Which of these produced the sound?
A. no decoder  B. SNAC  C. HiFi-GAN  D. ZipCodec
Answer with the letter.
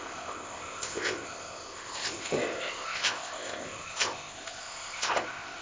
D